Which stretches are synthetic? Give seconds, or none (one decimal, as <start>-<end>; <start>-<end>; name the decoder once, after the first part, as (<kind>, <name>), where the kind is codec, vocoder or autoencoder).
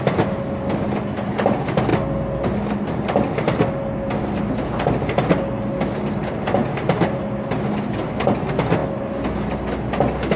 none